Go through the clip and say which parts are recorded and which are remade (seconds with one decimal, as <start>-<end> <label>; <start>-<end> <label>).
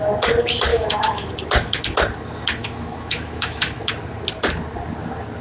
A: 0.0-0.7 recorded; 0.7-1.3 remade; 1.3-2.6 recorded; 2.6-3.9 remade; 3.9-5.4 recorded